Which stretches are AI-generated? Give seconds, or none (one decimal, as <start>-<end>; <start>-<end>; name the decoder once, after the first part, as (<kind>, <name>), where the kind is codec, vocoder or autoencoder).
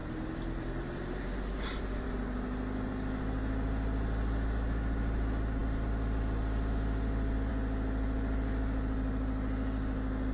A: 0.0-2.1 (vocoder, BigVGAN v2)